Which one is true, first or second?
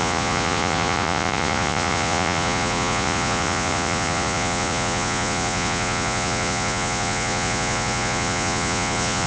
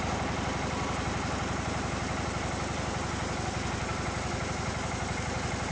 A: second